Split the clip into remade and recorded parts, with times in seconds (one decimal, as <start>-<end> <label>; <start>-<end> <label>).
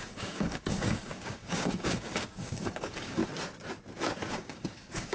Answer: 0.0-3.2 remade; 3.2-4.3 recorded; 4.3-5.1 remade